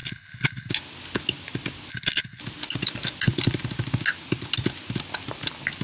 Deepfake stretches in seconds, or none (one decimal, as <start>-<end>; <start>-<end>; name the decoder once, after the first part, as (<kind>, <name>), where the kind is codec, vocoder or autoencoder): 0.0-0.7 (codec, HILCodec); 1.9-2.4